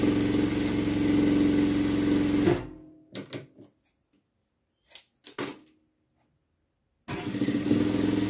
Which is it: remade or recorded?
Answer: recorded